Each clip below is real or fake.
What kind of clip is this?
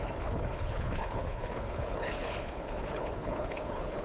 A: fake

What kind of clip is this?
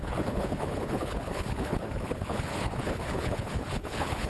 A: fake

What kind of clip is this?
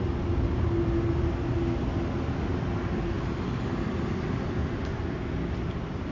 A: real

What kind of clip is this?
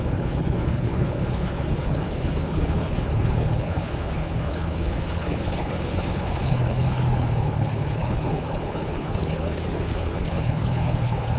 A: fake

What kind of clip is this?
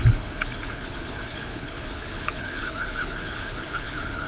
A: fake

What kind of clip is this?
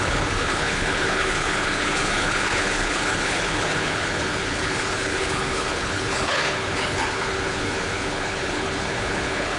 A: fake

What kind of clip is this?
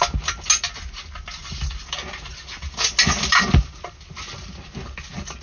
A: real